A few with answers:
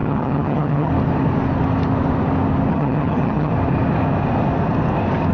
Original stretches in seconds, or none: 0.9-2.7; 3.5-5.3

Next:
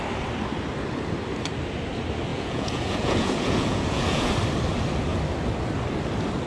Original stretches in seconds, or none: 0.0-2.3; 4.3-6.5

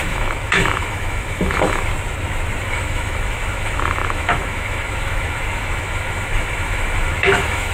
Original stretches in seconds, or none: 1.9-2.6

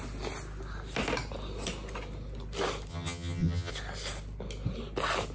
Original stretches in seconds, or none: 0.0-2.9; 3.7-5.3

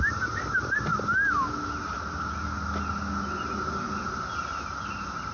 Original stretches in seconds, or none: 0.0-5.3